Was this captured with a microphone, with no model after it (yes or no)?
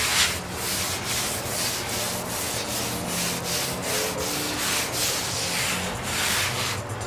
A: yes